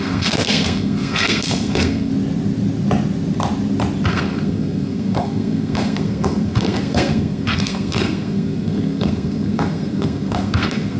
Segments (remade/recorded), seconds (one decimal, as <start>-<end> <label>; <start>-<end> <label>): 0.0-2.1 remade; 2.1-4.1 recorded; 4.1-11.0 remade